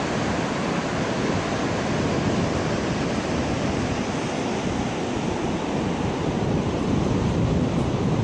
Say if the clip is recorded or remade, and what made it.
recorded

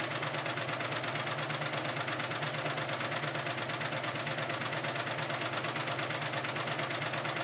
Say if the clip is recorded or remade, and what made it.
recorded